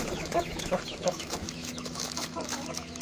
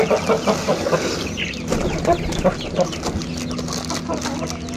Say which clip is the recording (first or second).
second